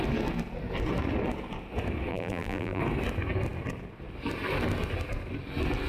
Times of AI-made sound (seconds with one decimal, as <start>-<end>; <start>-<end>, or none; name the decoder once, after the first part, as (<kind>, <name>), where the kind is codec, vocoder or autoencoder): 2.1-2.8 (vocoder, BigVGAN v2)

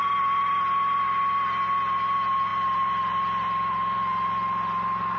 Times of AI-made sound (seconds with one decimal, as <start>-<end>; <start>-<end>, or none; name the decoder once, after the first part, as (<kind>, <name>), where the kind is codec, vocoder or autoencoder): 2.5-5.2 (vocoder, BigVGAN v2)

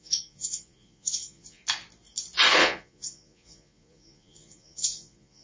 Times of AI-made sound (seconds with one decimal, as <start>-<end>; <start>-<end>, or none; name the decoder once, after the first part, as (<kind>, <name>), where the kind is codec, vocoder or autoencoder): 0.0-1.6 (vocoder, Vocos); 2.6-5.4

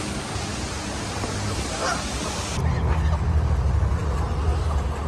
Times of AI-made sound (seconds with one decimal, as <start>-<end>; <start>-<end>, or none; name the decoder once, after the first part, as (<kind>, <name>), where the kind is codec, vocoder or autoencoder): none